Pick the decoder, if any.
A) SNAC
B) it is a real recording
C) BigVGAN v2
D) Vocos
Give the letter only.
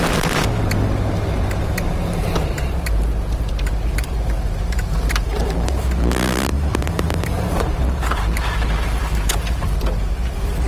C